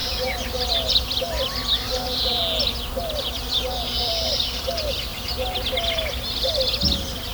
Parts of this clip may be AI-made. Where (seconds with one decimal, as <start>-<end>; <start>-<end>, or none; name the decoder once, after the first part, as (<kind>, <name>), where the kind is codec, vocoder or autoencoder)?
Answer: 0.0-2.4 (vocoder, BigVGAN v2); 4.1-5.1